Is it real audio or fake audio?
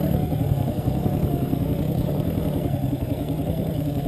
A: fake